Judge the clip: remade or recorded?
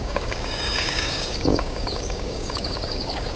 remade